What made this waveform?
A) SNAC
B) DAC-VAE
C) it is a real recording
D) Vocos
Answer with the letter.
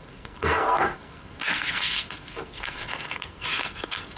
A